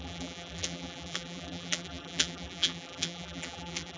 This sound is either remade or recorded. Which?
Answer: remade